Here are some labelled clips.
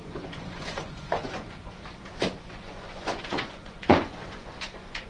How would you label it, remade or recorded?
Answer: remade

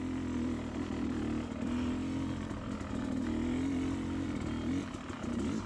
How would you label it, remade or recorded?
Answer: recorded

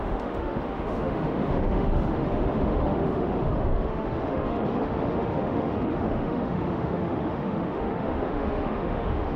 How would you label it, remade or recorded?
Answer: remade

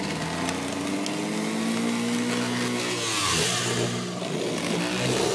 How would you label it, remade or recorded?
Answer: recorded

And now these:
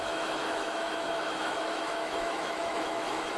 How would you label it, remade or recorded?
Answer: remade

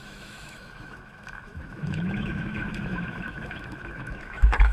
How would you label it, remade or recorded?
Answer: remade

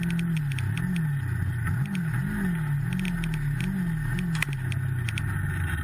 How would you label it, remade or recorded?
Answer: recorded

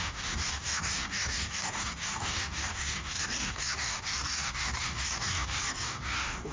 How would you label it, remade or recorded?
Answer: remade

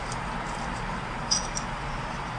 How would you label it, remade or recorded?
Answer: recorded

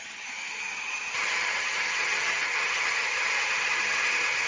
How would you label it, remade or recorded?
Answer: remade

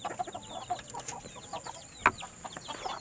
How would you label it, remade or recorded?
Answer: recorded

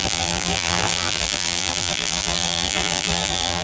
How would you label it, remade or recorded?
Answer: remade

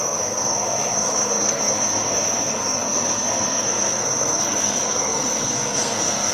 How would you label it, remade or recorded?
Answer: remade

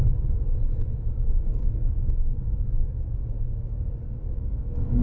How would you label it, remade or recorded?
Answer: remade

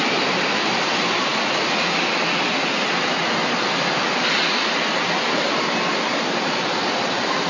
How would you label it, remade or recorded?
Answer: recorded